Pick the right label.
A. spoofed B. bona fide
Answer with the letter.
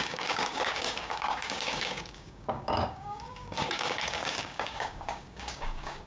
A